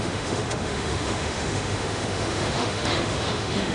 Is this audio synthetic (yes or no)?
yes